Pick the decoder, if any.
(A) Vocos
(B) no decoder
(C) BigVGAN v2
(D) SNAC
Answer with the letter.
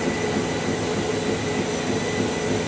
B